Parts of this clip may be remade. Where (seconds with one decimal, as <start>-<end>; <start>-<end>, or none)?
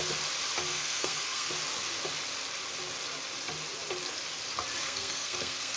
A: 0.7-1.5; 4.8-5.8